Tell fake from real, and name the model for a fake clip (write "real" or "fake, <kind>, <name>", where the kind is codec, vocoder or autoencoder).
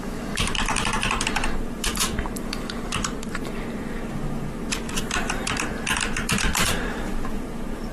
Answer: fake, vocoder, BigVGAN v2